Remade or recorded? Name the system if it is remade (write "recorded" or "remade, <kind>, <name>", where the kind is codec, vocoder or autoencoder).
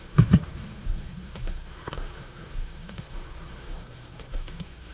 remade, codec, SNAC